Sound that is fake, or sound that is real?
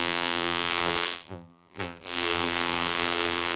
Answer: fake